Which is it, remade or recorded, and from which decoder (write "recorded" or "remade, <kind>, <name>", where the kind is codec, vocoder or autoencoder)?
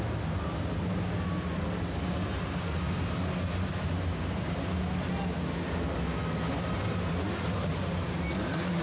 recorded